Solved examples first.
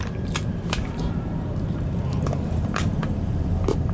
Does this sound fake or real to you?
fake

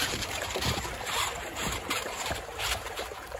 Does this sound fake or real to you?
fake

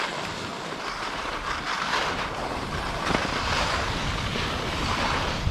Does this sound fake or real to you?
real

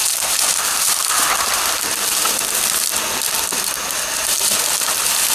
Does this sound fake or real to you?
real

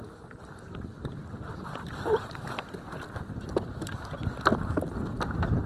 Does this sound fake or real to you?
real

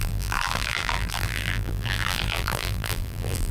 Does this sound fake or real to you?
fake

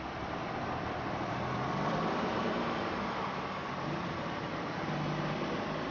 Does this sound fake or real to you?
fake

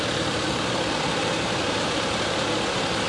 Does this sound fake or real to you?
fake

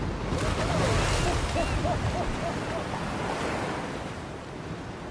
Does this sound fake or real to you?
real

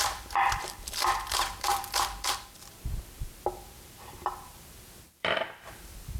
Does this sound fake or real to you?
fake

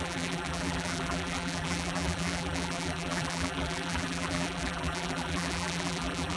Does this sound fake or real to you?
fake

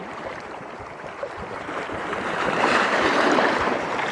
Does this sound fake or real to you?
fake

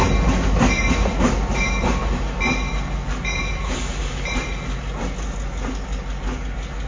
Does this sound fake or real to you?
real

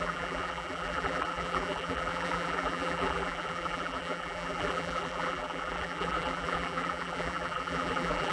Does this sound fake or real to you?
fake